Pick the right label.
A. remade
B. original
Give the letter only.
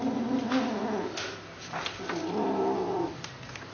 B